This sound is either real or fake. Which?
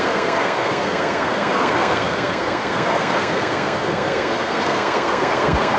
fake